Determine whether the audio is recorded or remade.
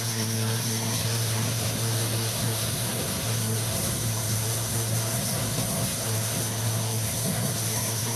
remade